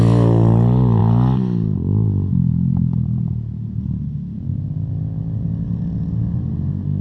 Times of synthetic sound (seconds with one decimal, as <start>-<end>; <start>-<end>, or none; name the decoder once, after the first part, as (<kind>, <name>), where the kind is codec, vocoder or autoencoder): none